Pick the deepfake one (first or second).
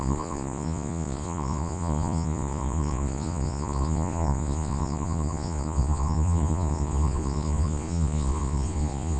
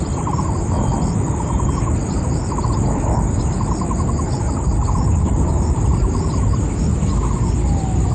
first